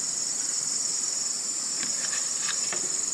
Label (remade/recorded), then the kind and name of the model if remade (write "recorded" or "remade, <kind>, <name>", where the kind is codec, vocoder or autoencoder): remade, vocoder, BigVGAN v2